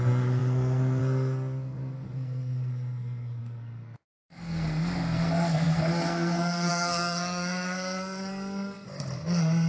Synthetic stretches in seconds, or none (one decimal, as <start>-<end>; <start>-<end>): 0.0-9.7